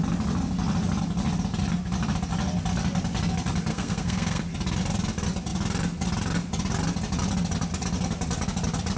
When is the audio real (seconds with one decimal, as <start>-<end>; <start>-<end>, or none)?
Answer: 0.0-3.7; 4.4-9.0